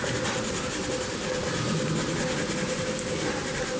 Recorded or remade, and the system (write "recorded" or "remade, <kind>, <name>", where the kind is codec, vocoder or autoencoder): recorded